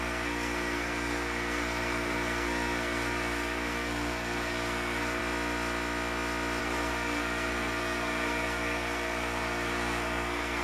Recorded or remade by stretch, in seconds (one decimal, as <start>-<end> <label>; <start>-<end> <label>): 0.0-5.2 remade; 5.2-6.6 recorded; 6.6-10.6 remade

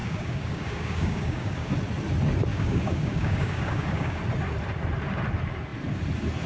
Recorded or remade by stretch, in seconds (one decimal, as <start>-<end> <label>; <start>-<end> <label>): 0.0-1.7 remade; 1.7-2.5 recorded; 2.5-4.2 remade; 4.2-6.5 recorded

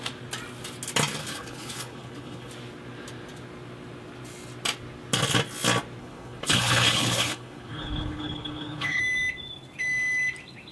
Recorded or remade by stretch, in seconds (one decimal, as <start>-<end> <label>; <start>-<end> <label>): 0.0-1.2 recorded; 1.2-2.5 remade; 2.5-6.0 recorded; 6.0-9.0 remade; 9.0-10.7 recorded

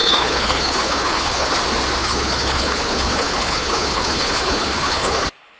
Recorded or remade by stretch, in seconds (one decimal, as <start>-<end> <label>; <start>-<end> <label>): 0.0-1.5 remade; 1.5-2.0 recorded; 2.0-5.6 remade

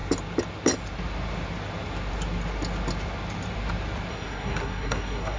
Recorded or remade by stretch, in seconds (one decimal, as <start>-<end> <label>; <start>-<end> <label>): 0.0-4.1 recorded; 4.1-5.4 remade

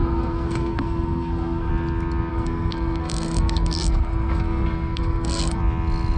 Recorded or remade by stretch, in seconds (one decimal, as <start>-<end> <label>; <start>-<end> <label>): 0.0-1.7 remade; 1.7-2.3 recorded; 2.3-5.6 remade; 5.6-6.2 recorded

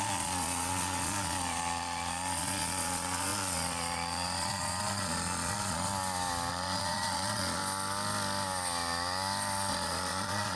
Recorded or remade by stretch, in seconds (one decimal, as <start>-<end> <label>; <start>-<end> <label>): 0.0-5.9 remade; 5.9-6.5 recorded; 6.5-7.6 remade; 7.6-9.7 recorded; 9.7-10.6 remade

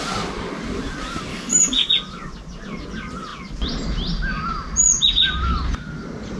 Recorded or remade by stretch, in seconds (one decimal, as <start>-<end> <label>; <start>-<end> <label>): 0.0-1.3 recorded; 1.3-1.9 remade; 1.9-6.4 recorded